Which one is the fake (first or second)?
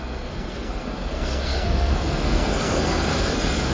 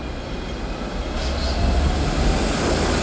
first